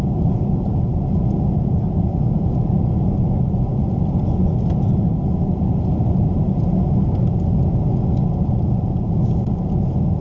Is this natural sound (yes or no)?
yes